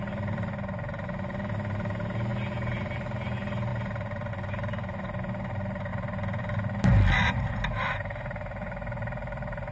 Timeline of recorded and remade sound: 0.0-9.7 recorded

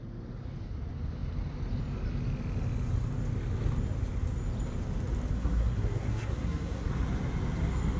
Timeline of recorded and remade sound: 0.0-5.3 recorded; 5.3-6.9 remade; 6.9-8.0 recorded